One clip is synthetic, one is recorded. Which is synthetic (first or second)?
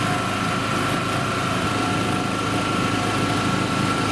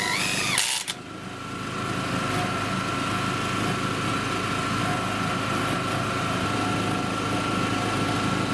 first